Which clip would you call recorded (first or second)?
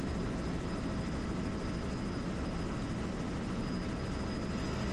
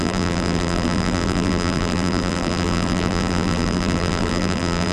first